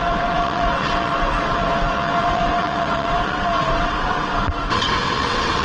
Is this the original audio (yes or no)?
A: no